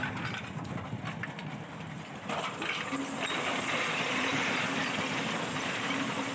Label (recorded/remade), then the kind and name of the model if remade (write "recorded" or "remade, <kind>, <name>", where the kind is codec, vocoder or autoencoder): recorded